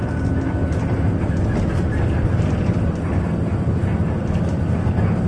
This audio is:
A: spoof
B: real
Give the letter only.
B